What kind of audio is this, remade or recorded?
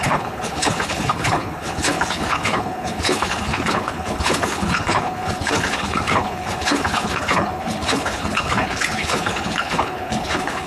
remade